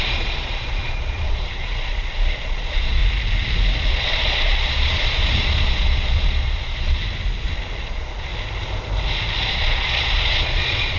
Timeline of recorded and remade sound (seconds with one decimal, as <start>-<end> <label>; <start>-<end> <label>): 0.0-3.0 remade; 3.0-3.9 recorded; 3.9-7.0 remade; 7.0-7.8 recorded; 7.8-8.3 remade; 8.3-9.5 recorded; 9.5-11.0 remade